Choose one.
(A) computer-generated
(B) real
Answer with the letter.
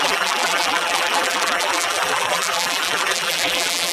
A